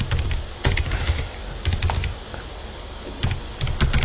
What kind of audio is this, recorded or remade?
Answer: recorded